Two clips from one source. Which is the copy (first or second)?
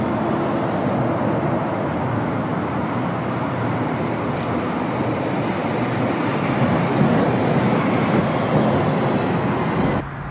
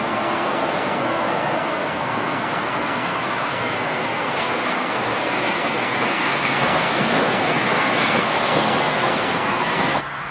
second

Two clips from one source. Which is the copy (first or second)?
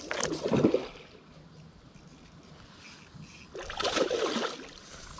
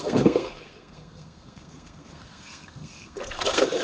second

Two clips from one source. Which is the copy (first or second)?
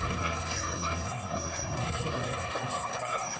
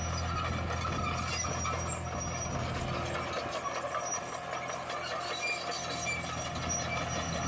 first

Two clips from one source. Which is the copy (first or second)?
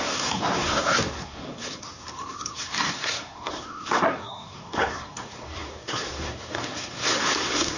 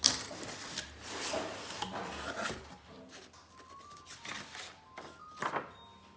first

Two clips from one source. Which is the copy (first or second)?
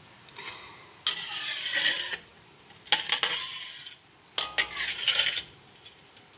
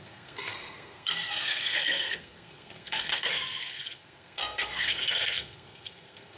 second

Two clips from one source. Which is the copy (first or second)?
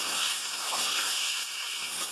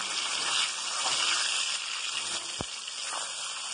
first